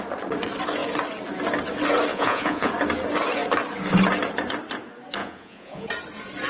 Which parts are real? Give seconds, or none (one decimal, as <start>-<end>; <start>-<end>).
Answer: 0.0-2.1; 2.7-5.2; 5.9-6.5